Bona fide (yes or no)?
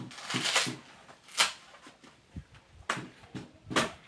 yes